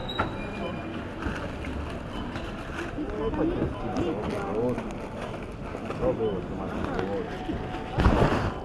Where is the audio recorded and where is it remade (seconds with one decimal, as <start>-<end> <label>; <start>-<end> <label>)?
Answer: 0.0-8.6 recorded